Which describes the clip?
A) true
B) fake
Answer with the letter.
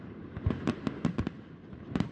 B